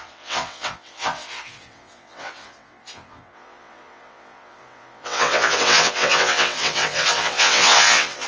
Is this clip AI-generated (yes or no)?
yes